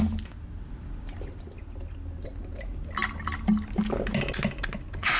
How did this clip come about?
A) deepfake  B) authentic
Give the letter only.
B